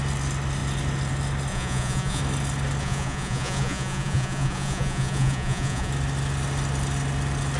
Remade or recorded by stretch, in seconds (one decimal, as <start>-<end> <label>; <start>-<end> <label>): 0.0-1.5 recorded; 1.5-2.2 remade; 2.2-2.8 recorded; 2.8-5.9 remade; 5.9-7.6 recorded